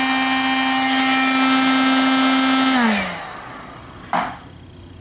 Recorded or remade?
recorded